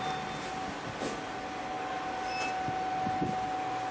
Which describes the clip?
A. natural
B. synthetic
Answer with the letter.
A